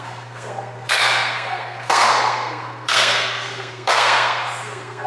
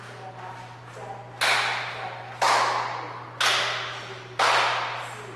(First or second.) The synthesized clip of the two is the first